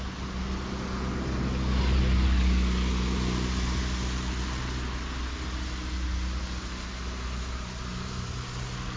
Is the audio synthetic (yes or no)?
no